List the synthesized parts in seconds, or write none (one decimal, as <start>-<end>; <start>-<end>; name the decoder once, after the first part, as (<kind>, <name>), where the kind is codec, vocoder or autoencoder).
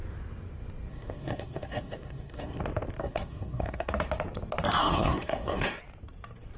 0.9-2.6 (codec, SNAC); 3.0-3.9; 4.8-5.8